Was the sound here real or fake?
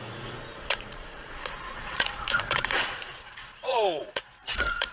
fake